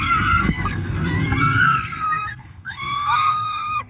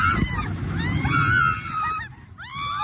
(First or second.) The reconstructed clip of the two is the first